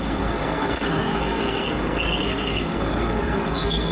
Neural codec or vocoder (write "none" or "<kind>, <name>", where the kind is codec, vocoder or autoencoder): codec, SNAC